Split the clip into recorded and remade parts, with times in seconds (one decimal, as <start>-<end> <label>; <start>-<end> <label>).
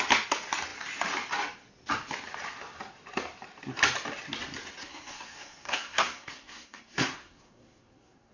0.0-4.8 recorded; 4.8-8.3 remade